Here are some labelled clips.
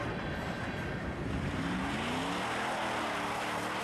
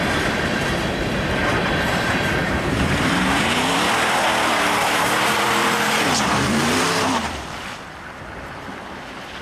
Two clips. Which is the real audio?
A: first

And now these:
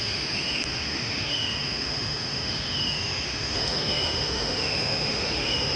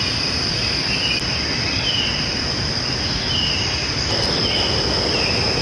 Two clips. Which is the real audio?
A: second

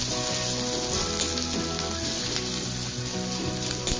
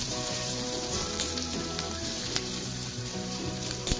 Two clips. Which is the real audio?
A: first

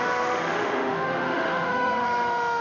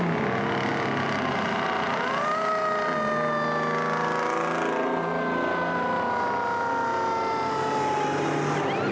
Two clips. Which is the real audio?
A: second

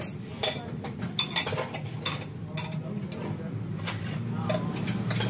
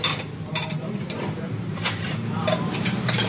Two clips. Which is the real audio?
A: first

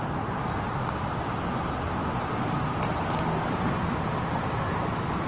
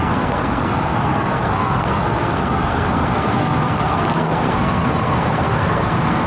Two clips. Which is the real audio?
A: first